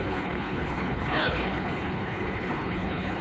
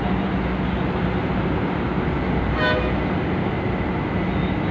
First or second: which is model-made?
first